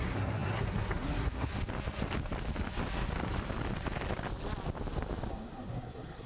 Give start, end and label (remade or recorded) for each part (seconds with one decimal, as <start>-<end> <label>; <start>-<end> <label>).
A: 0.0-1.5 remade; 1.5-5.3 recorded; 5.3-6.3 remade